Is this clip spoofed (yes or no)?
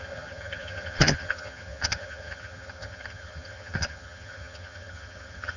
yes